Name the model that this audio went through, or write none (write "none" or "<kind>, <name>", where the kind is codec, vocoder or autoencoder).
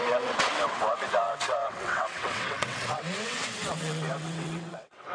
vocoder, WaveNeXt